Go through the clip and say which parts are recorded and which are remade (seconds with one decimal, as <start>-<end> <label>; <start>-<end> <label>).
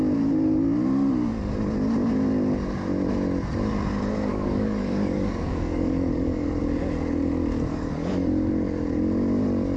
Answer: 0.0-4.3 recorded; 4.3-6.6 remade; 6.6-7.7 recorded; 7.7-8.5 remade; 8.5-9.8 recorded